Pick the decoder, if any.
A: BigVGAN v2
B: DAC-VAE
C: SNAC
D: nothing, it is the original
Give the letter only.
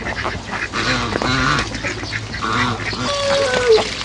D